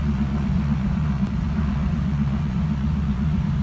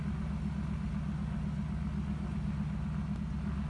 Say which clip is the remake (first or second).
first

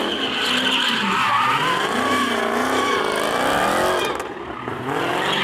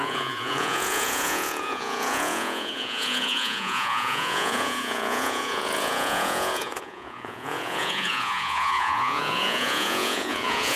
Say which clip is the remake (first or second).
second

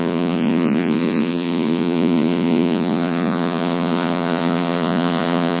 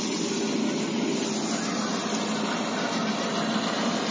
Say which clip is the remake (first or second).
first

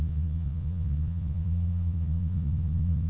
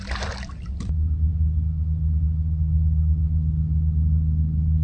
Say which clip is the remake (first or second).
first